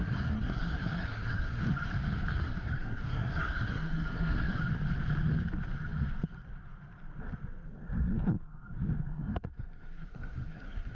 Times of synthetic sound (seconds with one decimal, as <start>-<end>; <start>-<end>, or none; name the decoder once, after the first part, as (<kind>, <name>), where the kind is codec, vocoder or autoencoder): 0.0-1.6 (codec, SNAC); 2.4-4.6; 9.1-10.9